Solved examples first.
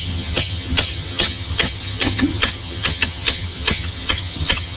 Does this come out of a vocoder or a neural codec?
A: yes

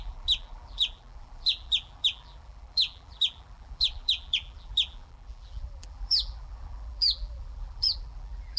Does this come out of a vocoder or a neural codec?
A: yes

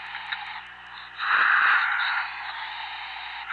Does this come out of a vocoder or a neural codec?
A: no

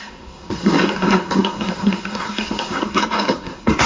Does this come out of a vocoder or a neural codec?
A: yes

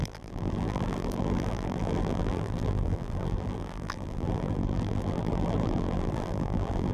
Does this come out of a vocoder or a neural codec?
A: yes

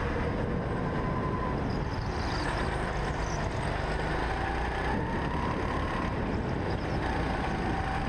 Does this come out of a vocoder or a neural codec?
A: no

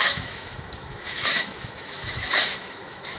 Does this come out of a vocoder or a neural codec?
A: yes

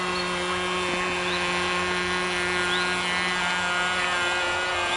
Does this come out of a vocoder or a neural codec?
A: no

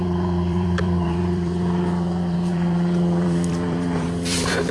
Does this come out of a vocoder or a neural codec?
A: yes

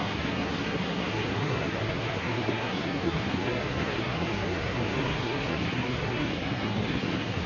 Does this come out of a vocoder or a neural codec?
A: yes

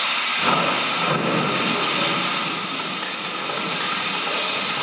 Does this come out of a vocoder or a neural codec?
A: no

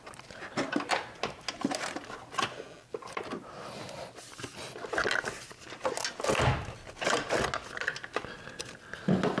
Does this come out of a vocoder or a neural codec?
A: no